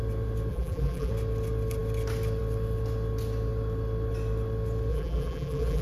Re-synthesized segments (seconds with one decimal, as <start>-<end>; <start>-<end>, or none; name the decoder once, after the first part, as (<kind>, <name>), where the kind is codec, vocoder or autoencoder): 0.5-1.1 (vocoder, BigVGAN v2); 4.9-5.8